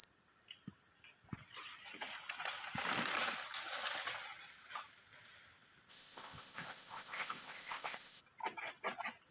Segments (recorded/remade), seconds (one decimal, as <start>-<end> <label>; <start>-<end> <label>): 0.0-5.9 recorded; 5.9-8.2 remade; 8.2-9.3 recorded